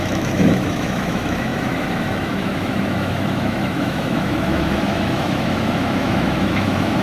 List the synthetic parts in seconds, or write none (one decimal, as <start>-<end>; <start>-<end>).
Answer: 0.0-7.0